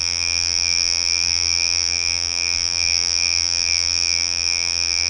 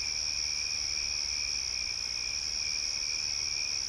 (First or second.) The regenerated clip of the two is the first